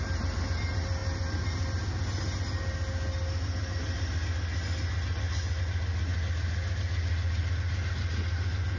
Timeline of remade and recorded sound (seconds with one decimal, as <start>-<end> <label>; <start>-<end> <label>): 0.0-8.8 recorded